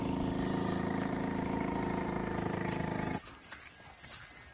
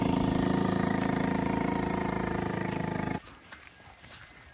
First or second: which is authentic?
first